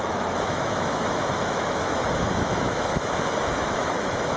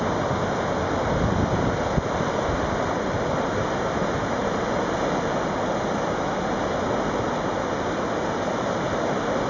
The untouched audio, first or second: second